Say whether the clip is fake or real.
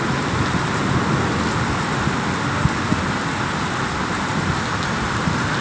real